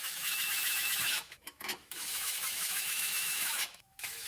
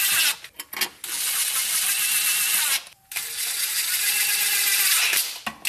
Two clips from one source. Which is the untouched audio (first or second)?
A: second